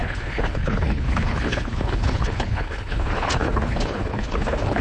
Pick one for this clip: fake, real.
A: fake